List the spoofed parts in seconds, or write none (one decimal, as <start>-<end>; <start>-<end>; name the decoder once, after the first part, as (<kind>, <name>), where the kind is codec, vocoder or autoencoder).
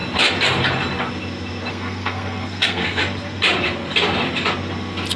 1.7-3.0 (codec, SNAC)